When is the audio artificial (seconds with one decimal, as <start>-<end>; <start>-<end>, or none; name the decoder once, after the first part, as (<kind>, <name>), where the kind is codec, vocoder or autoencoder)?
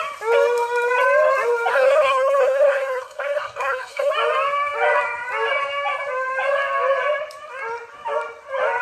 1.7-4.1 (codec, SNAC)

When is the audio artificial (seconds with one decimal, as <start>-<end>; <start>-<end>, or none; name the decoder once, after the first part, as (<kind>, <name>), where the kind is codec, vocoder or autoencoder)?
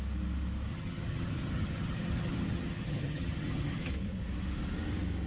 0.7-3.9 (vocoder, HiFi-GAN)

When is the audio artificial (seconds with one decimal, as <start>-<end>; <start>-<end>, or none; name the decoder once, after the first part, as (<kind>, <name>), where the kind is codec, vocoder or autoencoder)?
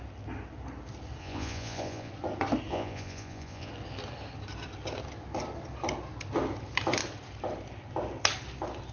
1.2-2.1 (vocoder, Vocos); 2.7-3.7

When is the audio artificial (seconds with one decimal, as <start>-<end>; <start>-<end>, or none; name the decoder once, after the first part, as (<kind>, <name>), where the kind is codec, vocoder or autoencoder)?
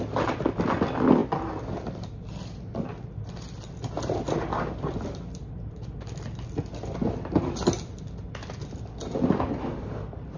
none